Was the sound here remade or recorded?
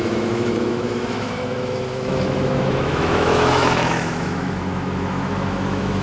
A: remade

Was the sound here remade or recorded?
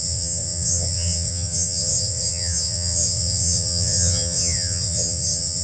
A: remade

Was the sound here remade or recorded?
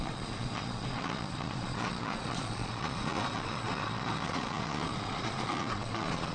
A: remade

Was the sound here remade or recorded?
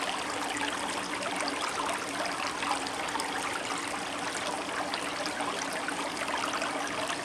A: recorded